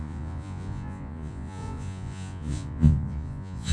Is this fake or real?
fake